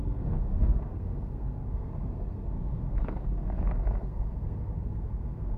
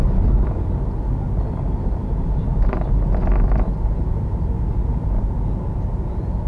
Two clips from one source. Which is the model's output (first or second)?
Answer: first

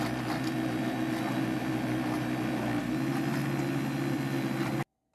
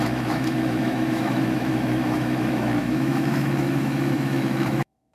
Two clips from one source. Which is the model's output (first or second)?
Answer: second